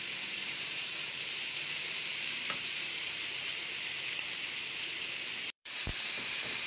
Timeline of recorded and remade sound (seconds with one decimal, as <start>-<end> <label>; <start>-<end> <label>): 0.0-3.5 remade; 3.5-4.6 recorded; 4.6-5.9 remade; 5.9-6.7 recorded